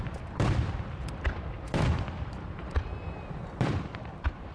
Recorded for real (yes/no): no